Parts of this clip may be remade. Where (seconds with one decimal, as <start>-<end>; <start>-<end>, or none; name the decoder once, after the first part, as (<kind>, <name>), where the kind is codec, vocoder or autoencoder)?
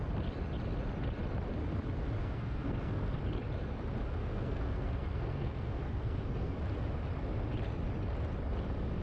2.2-3.2 (codec, SNAC); 4.2-6.6